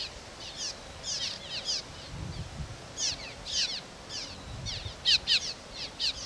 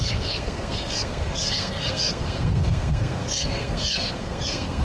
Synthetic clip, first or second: second